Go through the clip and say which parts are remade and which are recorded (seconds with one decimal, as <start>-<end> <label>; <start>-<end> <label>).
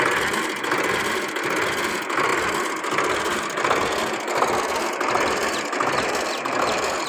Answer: 0.0-7.1 recorded